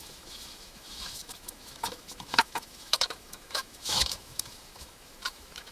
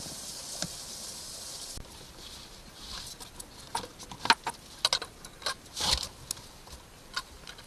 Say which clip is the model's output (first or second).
first